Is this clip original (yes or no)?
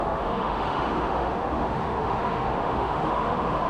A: no